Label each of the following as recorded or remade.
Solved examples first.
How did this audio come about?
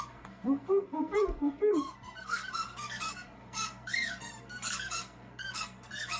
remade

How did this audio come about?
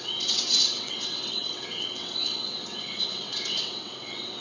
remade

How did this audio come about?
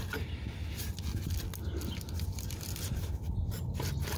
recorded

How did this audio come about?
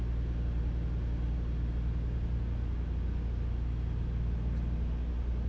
recorded